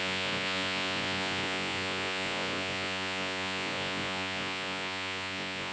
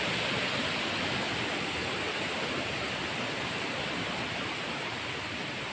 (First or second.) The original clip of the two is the second